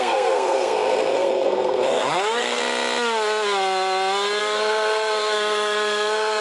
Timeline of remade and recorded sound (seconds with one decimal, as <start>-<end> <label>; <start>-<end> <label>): 0.0-2.6 remade; 2.6-4.4 recorded; 4.4-6.4 remade